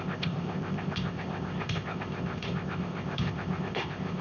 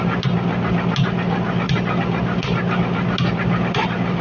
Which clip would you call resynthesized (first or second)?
first